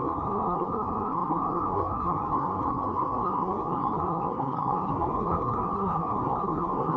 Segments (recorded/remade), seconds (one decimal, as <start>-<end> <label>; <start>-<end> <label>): 0.0-7.0 remade